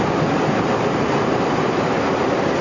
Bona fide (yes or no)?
yes